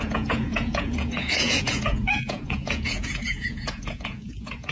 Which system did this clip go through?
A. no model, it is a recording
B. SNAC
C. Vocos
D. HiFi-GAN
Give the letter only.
C